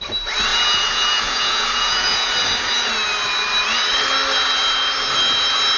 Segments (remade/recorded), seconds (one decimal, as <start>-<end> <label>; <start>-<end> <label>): 0.0-0.5 recorded; 0.5-2.3 remade; 2.3-5.8 recorded